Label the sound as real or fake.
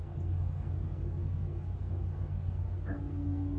fake